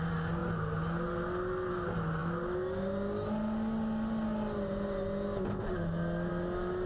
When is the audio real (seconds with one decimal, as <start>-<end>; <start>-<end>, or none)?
0.0-6.9